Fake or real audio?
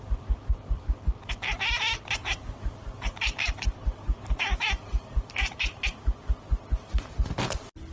real